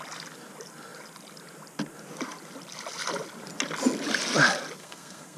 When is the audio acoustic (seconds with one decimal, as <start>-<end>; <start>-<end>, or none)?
0.0-4.8